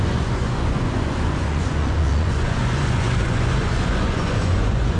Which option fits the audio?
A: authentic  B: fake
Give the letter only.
B